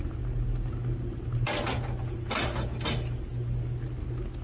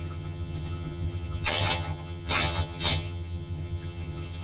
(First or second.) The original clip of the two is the first